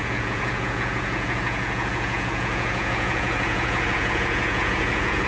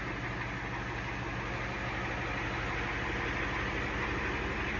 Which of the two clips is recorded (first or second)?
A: second